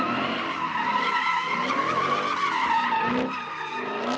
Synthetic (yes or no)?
no